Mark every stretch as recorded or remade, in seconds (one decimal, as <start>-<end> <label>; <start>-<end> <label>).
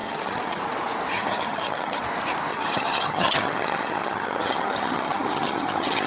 0.0-0.6 remade; 0.6-1.1 recorded; 1.1-2.0 remade; 2.0-2.5 recorded; 2.5-6.1 remade